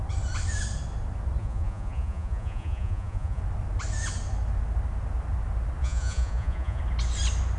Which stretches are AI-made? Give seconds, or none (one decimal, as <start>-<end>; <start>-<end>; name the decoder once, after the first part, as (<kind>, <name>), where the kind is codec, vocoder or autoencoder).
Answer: 1.4-3.4 (vocoder, Vocos); 5.8-6.8